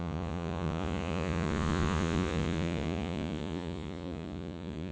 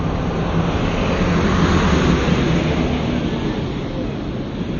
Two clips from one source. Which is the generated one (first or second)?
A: first